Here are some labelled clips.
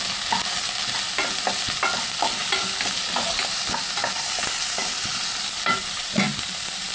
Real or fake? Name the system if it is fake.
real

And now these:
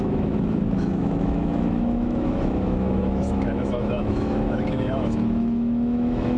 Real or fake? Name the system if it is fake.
fake, autoencoder, DAC-VAE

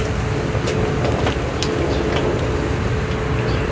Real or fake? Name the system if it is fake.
real